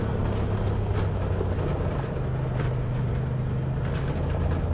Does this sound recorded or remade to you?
recorded